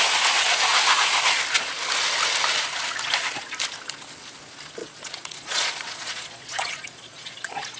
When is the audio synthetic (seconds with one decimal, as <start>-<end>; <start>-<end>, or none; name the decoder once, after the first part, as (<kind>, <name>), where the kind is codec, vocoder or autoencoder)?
4.8-7.8 (vocoder, Vocos)